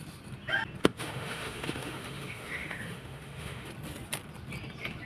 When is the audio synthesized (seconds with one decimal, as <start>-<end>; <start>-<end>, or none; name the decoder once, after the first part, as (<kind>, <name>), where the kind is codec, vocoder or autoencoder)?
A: 0.8-3.7 (autoencoder, DAC-VAE)